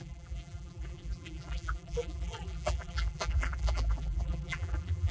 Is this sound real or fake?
fake